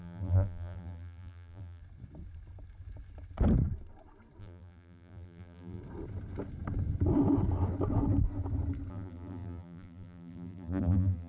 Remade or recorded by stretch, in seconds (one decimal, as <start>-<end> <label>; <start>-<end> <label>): 0.0-1.8 remade; 1.8-4.4 recorded; 4.4-5.8 remade; 5.8-8.9 recorded; 8.9-11.3 remade